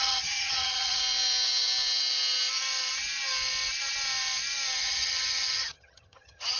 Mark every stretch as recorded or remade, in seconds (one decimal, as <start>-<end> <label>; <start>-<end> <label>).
0.0-1.0 remade; 1.0-4.8 recorded; 4.8-6.6 remade